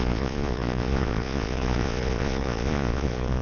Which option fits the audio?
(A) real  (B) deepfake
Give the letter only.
B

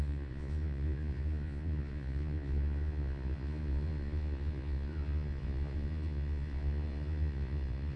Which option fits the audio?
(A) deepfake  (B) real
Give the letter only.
A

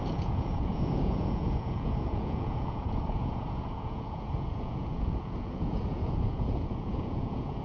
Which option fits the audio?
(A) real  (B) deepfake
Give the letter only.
B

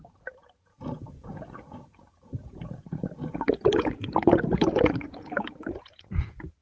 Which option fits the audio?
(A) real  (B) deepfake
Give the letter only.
B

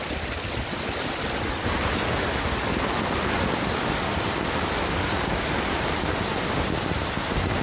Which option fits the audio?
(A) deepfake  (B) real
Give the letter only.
B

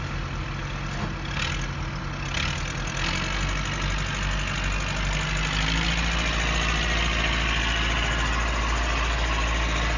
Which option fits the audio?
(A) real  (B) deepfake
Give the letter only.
A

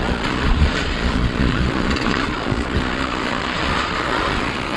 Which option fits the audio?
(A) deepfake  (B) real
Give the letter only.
A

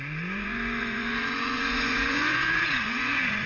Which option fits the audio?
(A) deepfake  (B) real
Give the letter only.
A